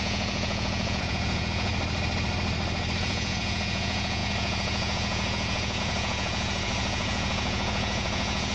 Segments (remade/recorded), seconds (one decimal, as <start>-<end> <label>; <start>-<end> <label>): 0.0-1.7 remade; 1.7-3.0 recorded; 3.0-8.5 remade